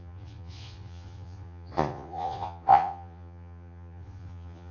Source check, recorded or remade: remade